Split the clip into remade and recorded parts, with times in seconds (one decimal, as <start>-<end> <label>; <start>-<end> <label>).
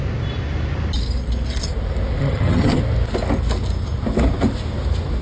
0.0-2.2 recorded; 2.2-2.8 remade; 2.8-5.2 recorded